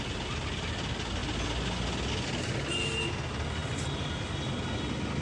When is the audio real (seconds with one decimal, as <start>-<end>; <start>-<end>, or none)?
0.0-5.2

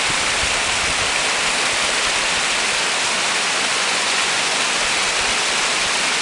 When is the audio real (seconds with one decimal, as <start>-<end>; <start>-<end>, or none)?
0.0-3.7; 4.6-6.2